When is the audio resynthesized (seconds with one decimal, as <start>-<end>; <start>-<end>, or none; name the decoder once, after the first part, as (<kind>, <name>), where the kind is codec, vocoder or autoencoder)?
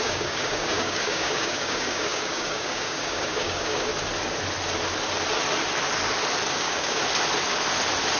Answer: 0.0-3.9 (codec, DAC); 6.5-7.0